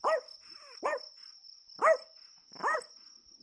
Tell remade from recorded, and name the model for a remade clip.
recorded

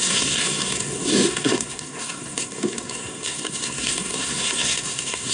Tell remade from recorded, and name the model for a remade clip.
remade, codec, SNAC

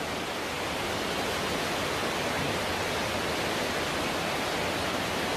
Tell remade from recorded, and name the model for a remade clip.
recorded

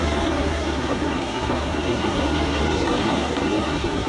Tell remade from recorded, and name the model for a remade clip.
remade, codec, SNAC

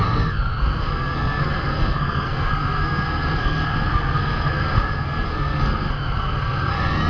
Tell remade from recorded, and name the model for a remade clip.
remade, codec, SNAC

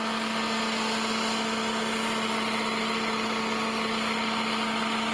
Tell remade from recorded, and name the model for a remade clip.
recorded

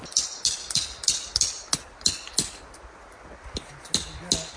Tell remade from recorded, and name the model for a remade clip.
recorded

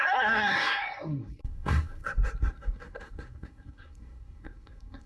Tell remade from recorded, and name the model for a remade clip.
remade, codec, SNAC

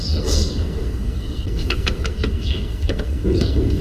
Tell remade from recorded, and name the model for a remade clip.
remade, codec, SNAC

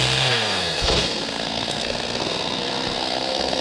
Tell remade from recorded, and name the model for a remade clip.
remade, codec, SNAC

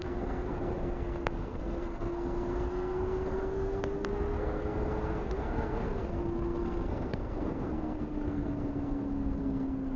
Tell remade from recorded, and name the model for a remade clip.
remade, codec, SNAC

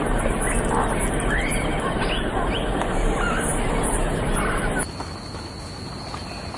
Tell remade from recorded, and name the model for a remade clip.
recorded